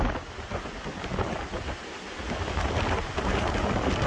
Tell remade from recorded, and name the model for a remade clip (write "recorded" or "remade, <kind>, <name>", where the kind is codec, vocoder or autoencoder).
recorded